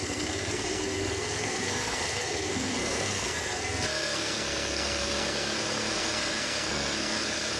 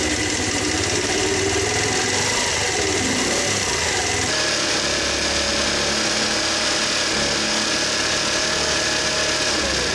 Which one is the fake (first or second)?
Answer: first